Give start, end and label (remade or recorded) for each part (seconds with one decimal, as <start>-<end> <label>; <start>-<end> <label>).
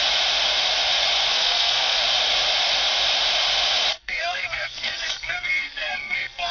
0.0-1.3 recorded; 1.3-2.0 remade; 2.0-3.9 recorded; 3.9-6.5 remade